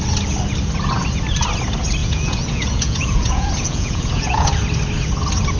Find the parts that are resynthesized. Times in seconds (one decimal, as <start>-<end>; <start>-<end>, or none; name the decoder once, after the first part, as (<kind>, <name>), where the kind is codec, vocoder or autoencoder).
2.0-4.5 (vocoder, Vocos)